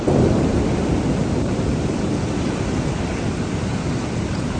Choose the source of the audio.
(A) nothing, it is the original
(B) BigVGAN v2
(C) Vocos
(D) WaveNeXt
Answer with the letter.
A